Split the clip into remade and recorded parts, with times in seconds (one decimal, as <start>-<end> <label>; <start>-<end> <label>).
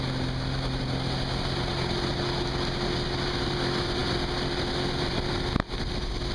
0.0-6.3 recorded